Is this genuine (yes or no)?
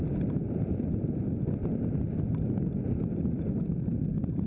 yes